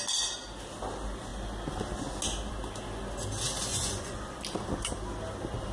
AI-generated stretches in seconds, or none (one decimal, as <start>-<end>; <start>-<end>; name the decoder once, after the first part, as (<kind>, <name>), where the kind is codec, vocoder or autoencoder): 3.7-4.4 (vocoder, Vocos)